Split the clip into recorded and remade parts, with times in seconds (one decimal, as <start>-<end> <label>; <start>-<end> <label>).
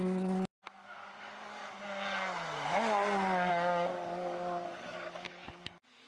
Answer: 0.0-1.6 remade; 1.6-3.5 recorded; 3.5-6.1 remade